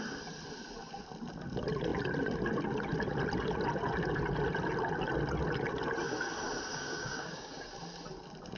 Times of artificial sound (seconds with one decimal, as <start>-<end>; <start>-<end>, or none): 6.7-7.7

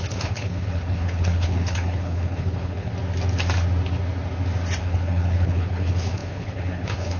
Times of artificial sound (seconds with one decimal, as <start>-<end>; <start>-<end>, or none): 0.0-2.9; 4.8-7.2